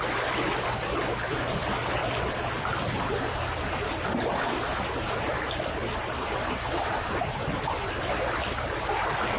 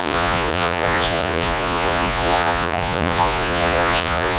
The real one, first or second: first